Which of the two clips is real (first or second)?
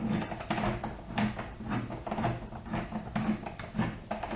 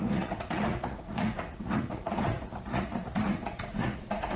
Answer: first